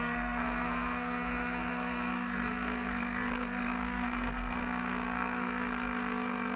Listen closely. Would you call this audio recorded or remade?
remade